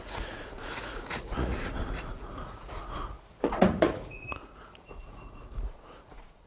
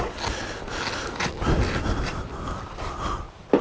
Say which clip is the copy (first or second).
first